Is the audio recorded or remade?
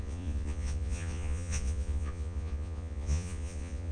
remade